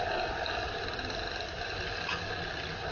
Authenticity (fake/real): real